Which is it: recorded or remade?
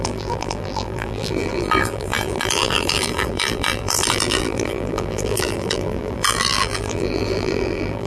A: remade